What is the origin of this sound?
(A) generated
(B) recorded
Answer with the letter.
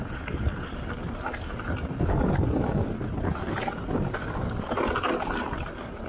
B